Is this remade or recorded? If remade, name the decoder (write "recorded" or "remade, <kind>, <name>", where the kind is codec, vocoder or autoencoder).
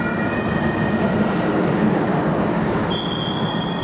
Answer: recorded